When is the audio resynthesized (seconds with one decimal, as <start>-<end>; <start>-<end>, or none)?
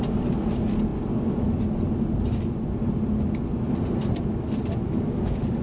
4.8-5.6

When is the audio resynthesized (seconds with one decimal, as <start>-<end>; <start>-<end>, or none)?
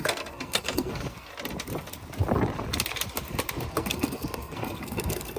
0.0-1.3; 3.7-5.4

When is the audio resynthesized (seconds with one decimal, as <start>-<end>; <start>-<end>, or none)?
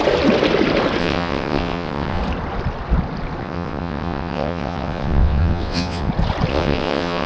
1.0-2.2; 3.4-6.1; 6.5-7.3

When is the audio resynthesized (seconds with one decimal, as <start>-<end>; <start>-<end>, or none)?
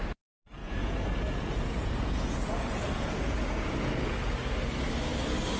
0.6-4.0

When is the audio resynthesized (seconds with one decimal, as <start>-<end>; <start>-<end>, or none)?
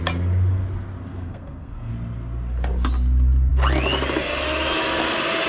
1.1-1.9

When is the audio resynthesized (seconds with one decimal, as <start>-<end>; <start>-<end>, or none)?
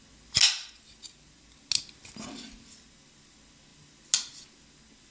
none